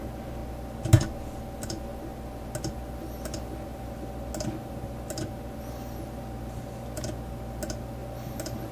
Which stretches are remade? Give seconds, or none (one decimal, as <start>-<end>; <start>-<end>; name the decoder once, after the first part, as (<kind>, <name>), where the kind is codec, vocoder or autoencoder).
none